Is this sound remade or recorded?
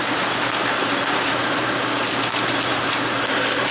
remade